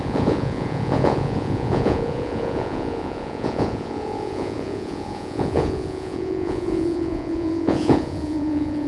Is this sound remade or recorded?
remade